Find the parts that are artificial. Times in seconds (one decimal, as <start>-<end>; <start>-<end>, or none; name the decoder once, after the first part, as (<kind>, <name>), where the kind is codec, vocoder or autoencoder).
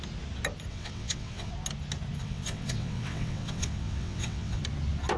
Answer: 0.7-1.5 (vocoder, WaveNeXt); 2.2-4.6